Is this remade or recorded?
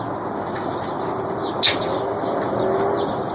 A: recorded